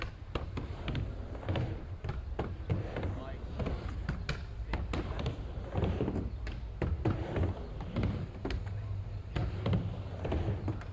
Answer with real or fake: real